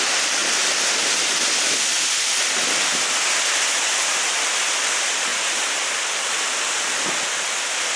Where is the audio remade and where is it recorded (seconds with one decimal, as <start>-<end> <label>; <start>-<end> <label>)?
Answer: 0.0-8.0 recorded